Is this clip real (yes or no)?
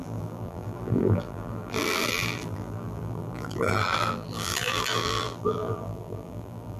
no